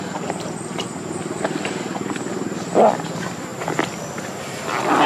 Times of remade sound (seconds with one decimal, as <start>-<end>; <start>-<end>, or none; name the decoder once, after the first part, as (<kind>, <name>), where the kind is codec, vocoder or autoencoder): none